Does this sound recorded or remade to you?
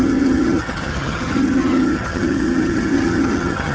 remade